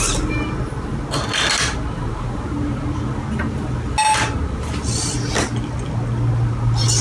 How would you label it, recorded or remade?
recorded